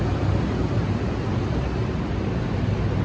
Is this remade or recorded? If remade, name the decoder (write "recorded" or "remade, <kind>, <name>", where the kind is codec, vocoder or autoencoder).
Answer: recorded